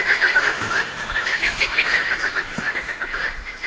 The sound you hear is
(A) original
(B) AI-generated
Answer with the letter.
B